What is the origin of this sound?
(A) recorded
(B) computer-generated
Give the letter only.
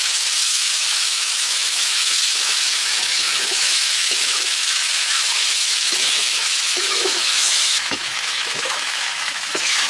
B